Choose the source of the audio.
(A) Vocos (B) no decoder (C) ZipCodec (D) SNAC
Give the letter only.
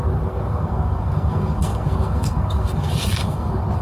D